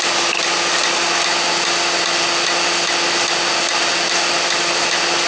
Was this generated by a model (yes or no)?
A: no